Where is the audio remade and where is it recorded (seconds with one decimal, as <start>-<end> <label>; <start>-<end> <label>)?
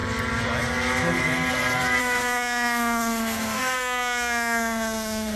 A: 0.0-2.0 recorded; 2.0-5.4 remade